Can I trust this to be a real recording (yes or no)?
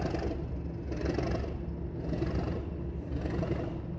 yes